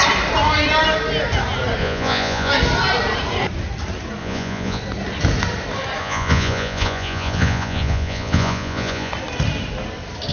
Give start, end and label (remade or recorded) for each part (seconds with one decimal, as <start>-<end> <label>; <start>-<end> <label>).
0.0-1.8 recorded; 1.8-2.5 remade; 2.5-4.2 recorded; 4.2-4.8 remade; 4.8-6.0 recorded; 6.0-9.1 remade; 9.1-10.3 recorded